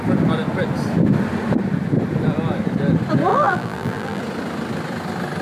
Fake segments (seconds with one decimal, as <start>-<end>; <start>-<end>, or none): 3.3-4.2